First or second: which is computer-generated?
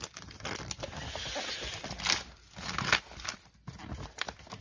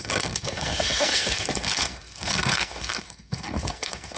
second